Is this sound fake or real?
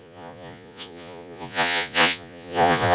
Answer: fake